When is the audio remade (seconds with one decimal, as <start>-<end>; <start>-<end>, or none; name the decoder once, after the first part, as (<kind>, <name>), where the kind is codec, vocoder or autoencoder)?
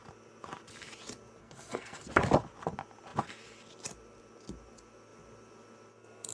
1.4-2.1 (codec, SNAC)